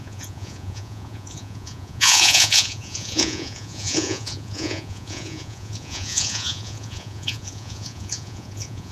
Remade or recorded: remade